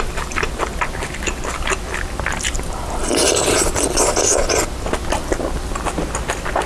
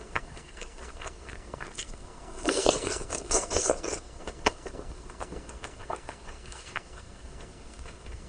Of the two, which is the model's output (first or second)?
second